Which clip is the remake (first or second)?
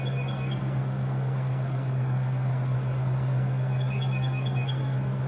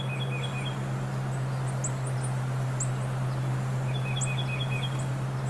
first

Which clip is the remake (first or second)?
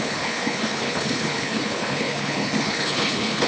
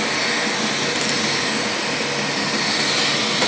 first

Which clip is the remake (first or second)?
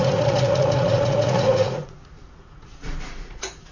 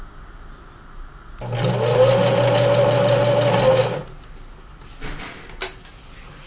first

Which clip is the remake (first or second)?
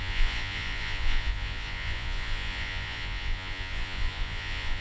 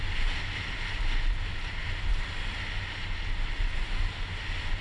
first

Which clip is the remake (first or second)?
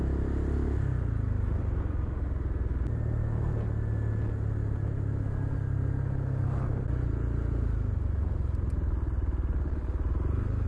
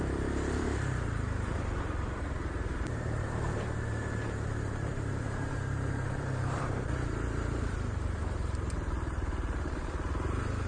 second